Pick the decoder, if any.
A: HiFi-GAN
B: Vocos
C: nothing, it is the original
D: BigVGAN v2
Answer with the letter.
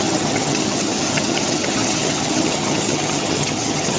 A